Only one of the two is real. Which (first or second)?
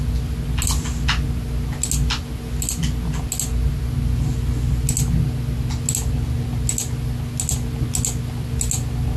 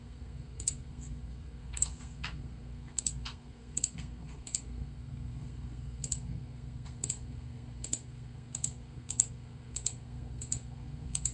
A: first